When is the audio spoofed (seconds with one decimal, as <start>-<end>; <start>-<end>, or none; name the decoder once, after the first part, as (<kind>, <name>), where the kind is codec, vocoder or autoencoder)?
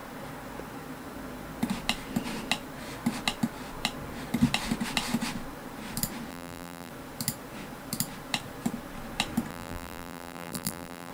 6.3-6.9 (vocoder, BigVGAN v2); 9.5-11.1